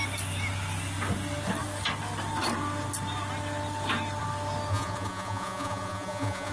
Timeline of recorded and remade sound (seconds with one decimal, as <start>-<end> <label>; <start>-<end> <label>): 0.0-4.7 recorded; 4.7-6.5 remade